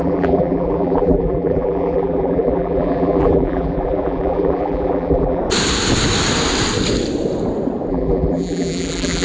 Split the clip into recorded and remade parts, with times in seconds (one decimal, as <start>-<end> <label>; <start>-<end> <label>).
0.0-5.4 remade; 5.4-7.9 recorded; 7.9-9.2 remade